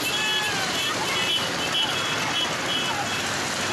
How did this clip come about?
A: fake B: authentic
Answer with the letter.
B